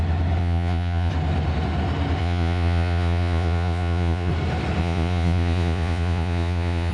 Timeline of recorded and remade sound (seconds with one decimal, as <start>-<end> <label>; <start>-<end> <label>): 0.0-0.4 recorded; 0.4-1.1 remade; 1.1-2.2 recorded; 2.2-4.3 remade; 4.3-4.8 recorded; 4.8-6.9 remade